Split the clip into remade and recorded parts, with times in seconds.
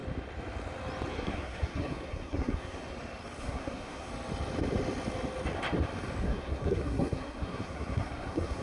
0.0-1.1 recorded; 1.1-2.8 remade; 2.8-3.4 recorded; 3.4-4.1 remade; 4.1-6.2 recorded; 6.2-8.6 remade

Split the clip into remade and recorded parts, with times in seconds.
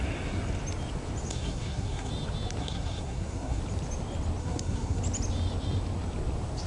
0.0-1.3 recorded; 1.3-2.1 remade; 2.1-2.6 recorded; 2.6-3.6 remade; 3.6-4.4 recorded; 4.4-5.0 remade; 5.0-6.7 recorded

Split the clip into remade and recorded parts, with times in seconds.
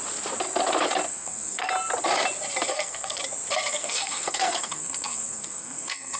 0.0-1.1 recorded; 1.1-1.7 remade; 1.7-2.7 recorded; 2.7-3.2 remade; 3.2-3.7 recorded; 3.7-6.2 remade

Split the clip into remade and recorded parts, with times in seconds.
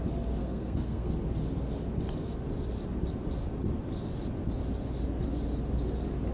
0.0-0.4 recorded; 0.4-1.1 remade; 1.1-6.3 recorded